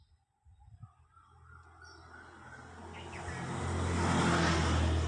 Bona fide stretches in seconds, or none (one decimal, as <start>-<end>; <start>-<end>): 0.0-5.1